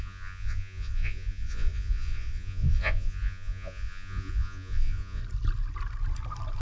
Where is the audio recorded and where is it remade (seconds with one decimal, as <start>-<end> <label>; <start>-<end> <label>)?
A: 0.0-5.2 remade; 5.2-6.6 recorded